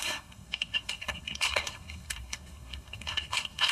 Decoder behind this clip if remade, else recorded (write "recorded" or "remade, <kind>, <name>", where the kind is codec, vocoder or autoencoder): remade, codec, SNAC